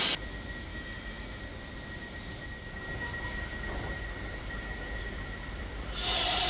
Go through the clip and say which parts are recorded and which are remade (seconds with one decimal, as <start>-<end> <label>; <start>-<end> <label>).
0.0-0.7 recorded; 0.7-1.4 remade; 1.4-6.5 recorded